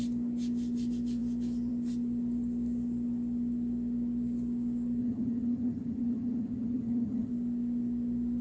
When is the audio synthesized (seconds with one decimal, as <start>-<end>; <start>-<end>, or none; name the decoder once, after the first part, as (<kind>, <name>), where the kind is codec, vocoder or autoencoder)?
5.0-7.3 (vocoder, HiFi-GAN)

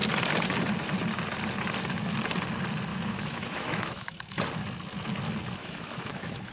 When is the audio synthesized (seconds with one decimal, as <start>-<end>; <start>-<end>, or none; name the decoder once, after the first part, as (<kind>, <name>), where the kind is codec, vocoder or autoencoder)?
2.9-4.4 (autoencoder, DAC-VAE); 5.6-6.5

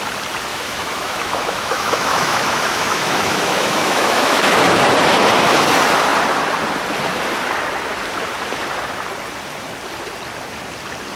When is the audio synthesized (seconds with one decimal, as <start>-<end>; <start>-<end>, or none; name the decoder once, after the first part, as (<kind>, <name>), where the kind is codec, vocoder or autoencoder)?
0.5-4.6 (autoencoder, DAC-VAE)

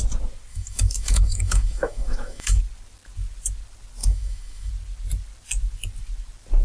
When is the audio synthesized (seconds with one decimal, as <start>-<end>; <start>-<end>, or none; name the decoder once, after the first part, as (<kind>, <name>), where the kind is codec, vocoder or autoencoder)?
0.5-2.6 (autoencoder, DAC-VAE); 4.0-4.7

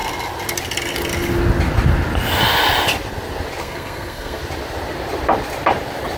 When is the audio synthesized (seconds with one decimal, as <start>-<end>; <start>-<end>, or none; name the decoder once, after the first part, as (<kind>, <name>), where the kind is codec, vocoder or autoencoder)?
3.6-4.4 (codec, SNAC)

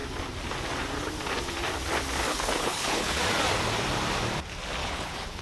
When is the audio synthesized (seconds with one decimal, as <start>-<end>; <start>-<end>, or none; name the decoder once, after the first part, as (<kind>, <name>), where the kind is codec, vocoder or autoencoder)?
2.3-3.2 (codec, HILCodec); 4.8-5.4

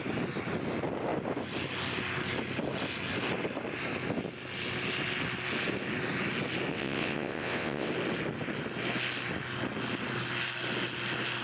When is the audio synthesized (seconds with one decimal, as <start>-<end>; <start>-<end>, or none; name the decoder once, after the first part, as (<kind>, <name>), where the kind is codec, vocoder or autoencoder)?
6.7-7.9 (vocoder, WaveNeXt)